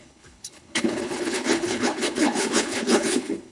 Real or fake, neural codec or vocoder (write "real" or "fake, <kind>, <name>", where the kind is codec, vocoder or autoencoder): fake, codec, HILCodec